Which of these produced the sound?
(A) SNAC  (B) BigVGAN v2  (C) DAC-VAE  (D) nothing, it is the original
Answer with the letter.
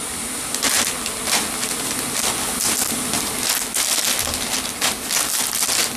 D